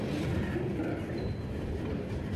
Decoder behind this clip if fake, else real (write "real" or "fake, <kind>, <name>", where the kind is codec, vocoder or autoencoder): real